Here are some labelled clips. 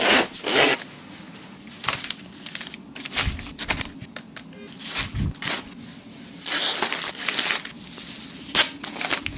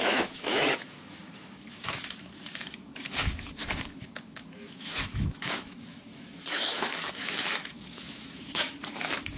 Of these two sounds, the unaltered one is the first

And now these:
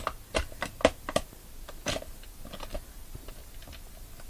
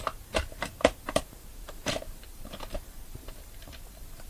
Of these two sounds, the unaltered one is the first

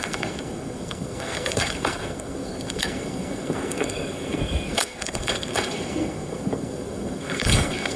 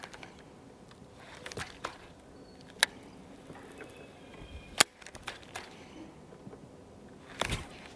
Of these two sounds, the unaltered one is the second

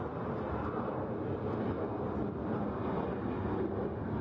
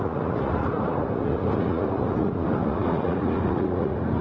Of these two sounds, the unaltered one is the first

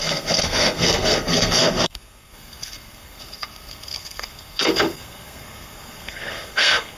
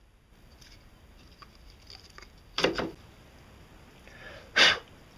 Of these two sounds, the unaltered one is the second